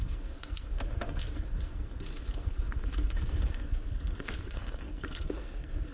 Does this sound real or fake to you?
fake